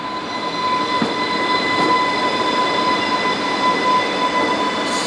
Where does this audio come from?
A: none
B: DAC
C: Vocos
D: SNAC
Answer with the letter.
A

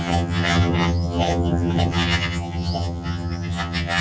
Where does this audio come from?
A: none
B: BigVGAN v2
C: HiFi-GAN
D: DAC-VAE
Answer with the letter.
C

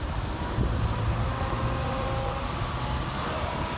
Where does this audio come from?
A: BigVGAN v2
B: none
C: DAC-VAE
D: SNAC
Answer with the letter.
B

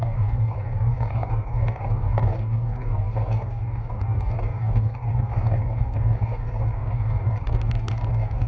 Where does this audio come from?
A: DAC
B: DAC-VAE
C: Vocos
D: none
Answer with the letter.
A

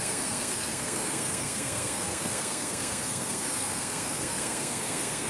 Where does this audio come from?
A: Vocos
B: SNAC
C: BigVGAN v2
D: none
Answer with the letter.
B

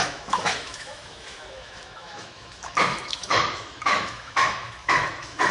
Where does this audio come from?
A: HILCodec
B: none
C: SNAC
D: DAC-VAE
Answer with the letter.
D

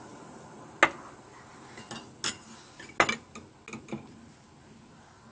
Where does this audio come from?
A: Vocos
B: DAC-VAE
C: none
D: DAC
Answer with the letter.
C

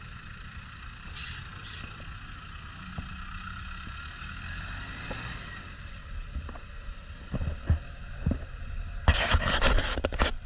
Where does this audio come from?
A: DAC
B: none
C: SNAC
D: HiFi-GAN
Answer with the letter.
B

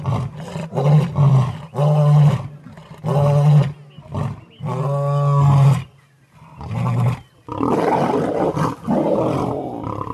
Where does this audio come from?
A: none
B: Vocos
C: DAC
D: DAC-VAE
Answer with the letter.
A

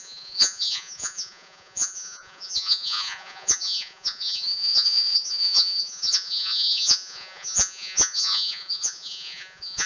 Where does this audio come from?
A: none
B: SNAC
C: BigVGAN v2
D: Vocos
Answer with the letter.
D